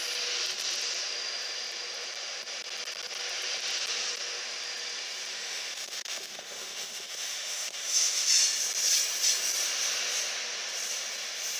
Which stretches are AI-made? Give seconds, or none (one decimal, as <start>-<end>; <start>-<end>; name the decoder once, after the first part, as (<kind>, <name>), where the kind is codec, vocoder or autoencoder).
5.3-8.3 (autoencoder, DAC-VAE)